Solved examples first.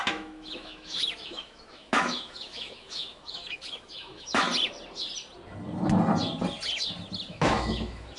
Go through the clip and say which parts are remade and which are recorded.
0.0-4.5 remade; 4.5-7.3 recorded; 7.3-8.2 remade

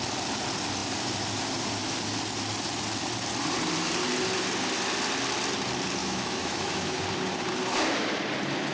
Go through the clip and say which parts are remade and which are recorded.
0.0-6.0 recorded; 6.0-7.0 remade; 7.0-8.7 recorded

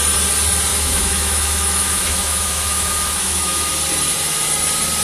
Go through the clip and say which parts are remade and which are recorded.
0.0-0.7 recorded; 0.7-3.7 remade; 3.7-5.0 recorded

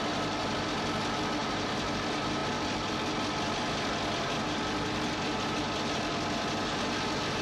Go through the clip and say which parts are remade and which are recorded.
0.0-7.4 recorded

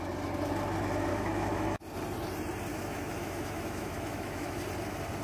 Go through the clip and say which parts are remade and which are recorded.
0.0-1.1 recorded; 1.1-1.8 remade; 1.8-2.7 recorded; 2.7-4.6 remade; 4.6-5.2 recorded

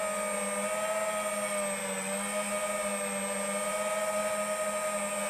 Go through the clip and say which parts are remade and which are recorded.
0.0-5.3 recorded